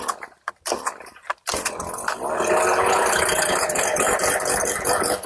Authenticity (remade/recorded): recorded